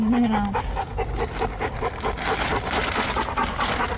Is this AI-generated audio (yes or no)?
no